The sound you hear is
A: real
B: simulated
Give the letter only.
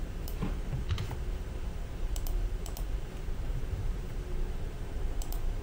B